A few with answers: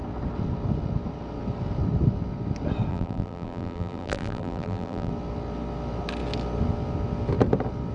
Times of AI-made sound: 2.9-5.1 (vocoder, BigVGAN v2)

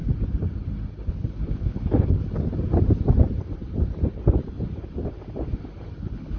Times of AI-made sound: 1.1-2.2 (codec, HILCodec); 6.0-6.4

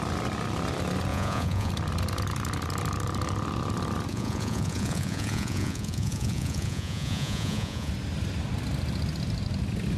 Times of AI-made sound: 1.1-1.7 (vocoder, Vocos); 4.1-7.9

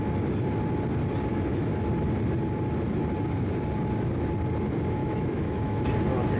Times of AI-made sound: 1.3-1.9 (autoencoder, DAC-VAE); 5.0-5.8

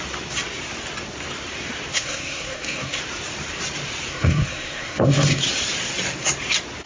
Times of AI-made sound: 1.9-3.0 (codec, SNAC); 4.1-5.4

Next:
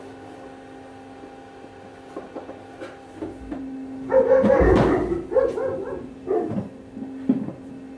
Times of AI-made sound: none

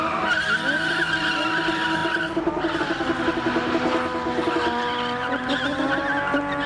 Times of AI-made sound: none